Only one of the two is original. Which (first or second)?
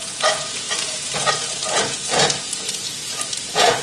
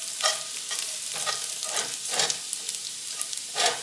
second